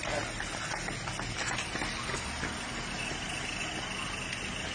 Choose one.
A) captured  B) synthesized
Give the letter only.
A